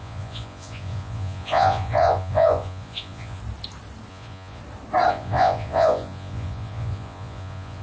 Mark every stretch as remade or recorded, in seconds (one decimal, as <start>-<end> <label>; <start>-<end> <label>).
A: 0.0-3.4 remade; 3.4-4.1 recorded; 4.1-4.6 remade; 4.6-5.1 recorded; 5.1-7.8 remade